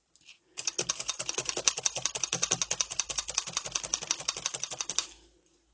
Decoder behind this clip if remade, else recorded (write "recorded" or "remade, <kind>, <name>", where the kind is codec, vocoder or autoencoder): recorded